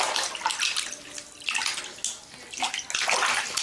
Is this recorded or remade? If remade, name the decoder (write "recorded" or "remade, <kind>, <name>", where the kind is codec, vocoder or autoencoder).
recorded